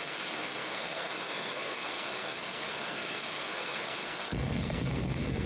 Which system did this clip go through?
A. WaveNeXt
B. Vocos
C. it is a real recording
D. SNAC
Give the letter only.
D